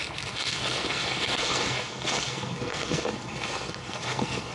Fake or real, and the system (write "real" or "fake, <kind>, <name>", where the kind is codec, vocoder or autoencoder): fake, codec, SNAC